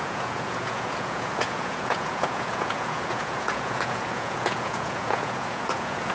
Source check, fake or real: fake